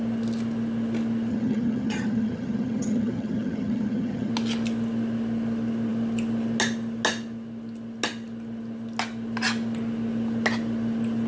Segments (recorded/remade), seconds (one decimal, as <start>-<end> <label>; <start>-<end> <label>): 0.0-1.3 recorded; 1.3-4.3 remade; 4.3-11.3 recorded